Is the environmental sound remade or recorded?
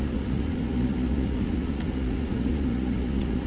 remade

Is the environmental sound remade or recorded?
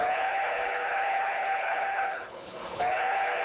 remade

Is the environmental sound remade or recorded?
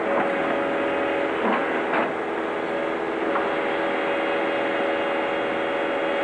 recorded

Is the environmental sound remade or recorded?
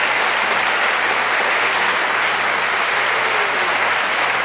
recorded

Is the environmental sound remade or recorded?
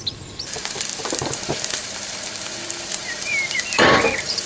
remade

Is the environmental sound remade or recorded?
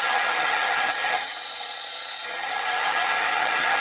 remade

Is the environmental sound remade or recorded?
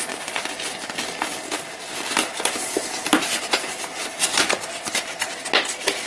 recorded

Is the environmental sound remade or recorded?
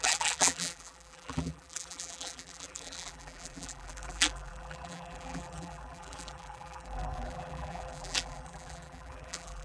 remade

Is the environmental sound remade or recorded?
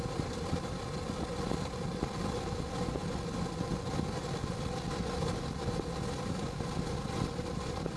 recorded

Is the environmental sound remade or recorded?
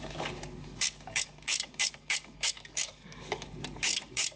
remade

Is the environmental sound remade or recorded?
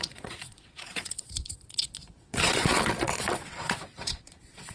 remade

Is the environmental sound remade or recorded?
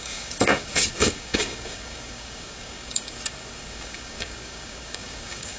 remade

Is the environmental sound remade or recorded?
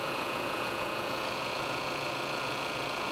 remade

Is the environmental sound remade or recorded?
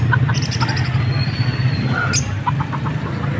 recorded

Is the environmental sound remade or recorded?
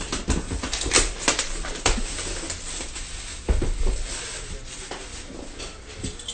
recorded